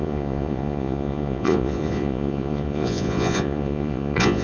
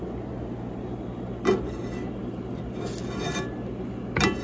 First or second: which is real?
second